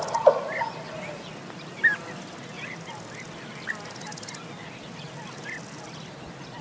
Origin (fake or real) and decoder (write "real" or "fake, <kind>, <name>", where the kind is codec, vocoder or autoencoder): real